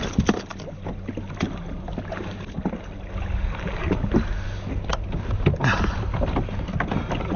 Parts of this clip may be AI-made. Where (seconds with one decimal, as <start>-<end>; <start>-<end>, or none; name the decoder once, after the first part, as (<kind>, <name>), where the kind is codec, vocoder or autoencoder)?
none